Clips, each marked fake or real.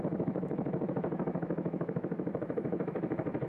fake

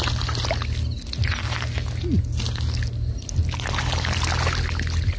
real